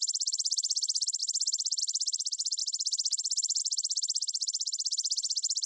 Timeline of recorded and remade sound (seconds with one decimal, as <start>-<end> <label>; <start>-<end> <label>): 0.0-5.7 remade

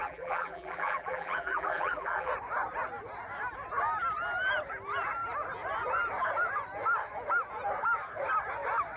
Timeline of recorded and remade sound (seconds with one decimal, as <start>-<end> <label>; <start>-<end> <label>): 0.0-2.3 remade; 2.3-9.0 recorded

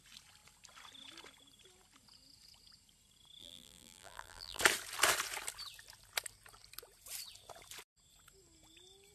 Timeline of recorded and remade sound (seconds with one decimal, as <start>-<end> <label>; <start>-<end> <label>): 0.0-3.4 recorded; 3.4-4.6 remade; 4.6-9.1 recorded